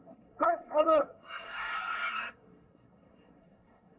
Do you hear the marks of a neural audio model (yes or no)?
yes